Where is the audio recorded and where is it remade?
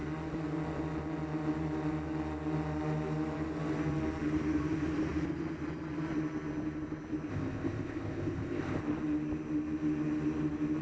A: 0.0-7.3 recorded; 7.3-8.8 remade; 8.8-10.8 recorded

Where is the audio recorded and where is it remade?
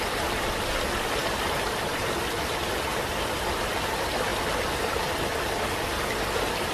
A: 0.0-2.9 recorded; 2.9-3.6 remade; 3.6-6.7 recorded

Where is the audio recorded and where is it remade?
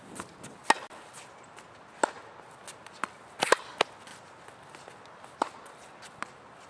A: 0.0-6.7 recorded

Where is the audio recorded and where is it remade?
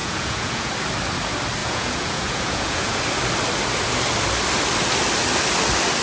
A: 0.0-0.7 remade; 0.7-1.6 recorded; 1.6-3.0 remade; 3.0-6.0 recorded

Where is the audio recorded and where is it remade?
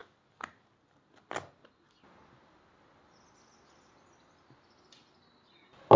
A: 0.0-6.0 recorded